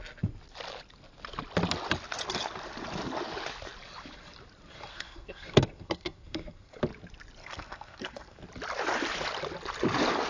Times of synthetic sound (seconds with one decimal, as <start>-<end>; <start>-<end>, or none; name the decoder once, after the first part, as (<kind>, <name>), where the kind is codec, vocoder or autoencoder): 4.9-6.8 (codec, SNAC); 7.4-8.4